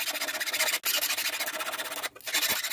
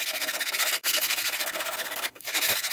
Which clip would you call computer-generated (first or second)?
second